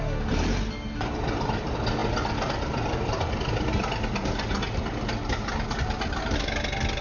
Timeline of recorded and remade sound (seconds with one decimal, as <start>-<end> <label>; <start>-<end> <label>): 0.0-7.0 recorded